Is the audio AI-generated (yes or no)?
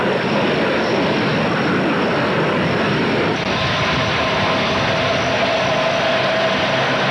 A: no